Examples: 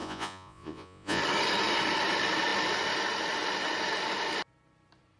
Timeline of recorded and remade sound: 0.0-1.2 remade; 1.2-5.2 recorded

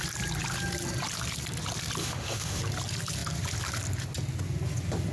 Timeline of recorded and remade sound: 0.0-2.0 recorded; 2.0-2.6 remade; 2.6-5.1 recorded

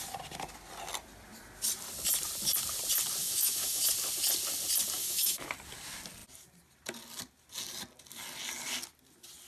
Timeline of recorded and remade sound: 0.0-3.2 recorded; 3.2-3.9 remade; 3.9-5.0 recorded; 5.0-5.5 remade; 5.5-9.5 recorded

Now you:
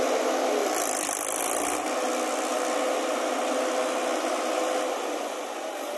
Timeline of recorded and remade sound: 0.0-6.0 recorded

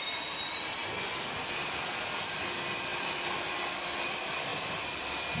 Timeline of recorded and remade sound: 0.0-0.8 remade; 0.8-1.9 recorded; 1.9-5.4 remade

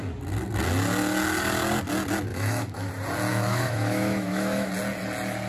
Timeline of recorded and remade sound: 0.0-2.3 recorded; 2.3-2.9 remade; 2.9-3.3 recorded; 3.3-4.7 remade; 4.7-5.5 recorded